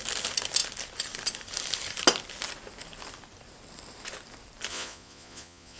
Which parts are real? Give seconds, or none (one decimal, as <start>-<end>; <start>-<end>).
0.0-4.7